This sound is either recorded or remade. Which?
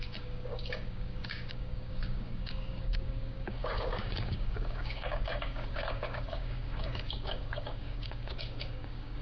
remade